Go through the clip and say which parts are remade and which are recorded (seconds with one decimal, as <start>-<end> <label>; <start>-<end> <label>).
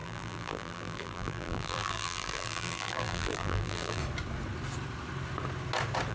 0.0-4.0 remade; 4.0-6.1 recorded